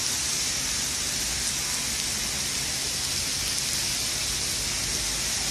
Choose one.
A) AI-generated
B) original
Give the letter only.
B